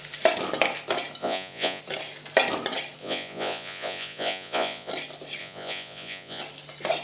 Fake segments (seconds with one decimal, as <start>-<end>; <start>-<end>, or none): 1.2-1.8; 3.0-4.9; 5.4-6.4